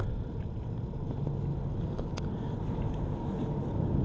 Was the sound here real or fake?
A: real